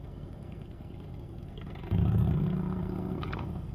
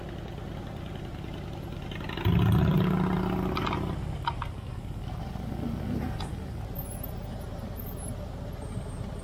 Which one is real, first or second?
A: second